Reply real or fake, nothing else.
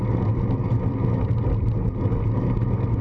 real